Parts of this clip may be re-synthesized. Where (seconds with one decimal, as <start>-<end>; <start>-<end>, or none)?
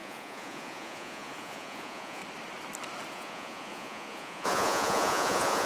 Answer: 0.0-2.2; 3.1-5.7